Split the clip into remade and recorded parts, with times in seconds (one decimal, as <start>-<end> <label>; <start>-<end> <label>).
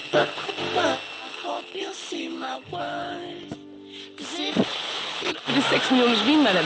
0.0-0.5 remade; 0.5-1.3 recorded; 1.3-3.4 remade; 3.4-4.7 recorded; 4.7-5.3 remade; 5.3-6.6 recorded